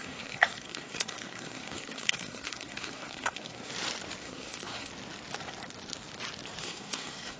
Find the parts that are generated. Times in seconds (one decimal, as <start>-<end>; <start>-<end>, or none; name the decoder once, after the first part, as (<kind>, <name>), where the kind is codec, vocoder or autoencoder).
0.0-3.7 (codec, SNAC); 4.2-4.9; 6.6-7.4